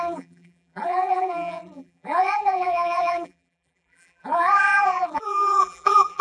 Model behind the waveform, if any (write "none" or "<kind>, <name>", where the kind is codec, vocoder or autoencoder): vocoder, BigVGAN v2